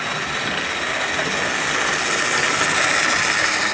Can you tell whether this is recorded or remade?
recorded